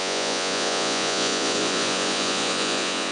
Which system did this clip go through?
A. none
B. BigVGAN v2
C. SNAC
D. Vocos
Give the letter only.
D